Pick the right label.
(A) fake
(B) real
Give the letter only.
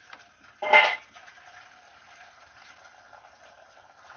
A